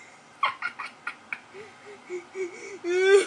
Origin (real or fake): real